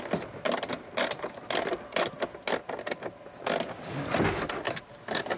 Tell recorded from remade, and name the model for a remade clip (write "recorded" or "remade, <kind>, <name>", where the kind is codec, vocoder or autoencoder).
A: recorded